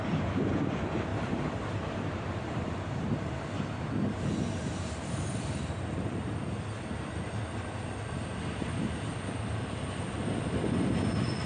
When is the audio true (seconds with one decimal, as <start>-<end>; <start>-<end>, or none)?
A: 0.0-1.1; 4.3-11.5